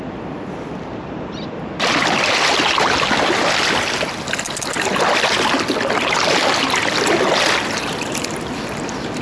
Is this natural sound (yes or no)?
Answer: yes